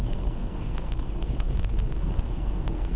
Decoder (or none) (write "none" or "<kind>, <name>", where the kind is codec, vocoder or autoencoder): codec, SNAC